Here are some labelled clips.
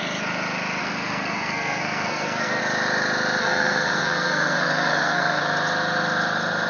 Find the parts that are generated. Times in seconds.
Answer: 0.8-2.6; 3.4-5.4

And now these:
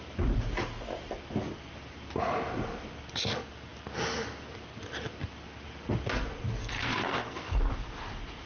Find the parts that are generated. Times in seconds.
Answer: 6.6-7.7

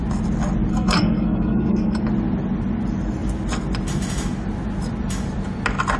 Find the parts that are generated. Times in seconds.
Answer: 0.7-2.0

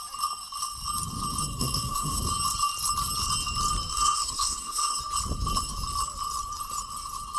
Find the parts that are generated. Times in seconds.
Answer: 1.4-2.2; 3.9-5.0

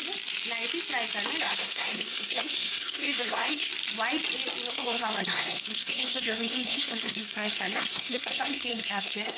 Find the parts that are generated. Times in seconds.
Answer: 1.4-3.7; 4.7-9.4

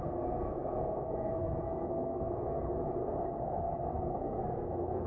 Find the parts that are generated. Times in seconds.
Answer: 0.0-2.8; 3.9-5.1

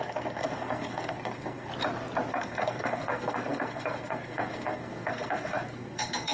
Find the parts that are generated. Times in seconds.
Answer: 0.0-1.7; 2.3-6.3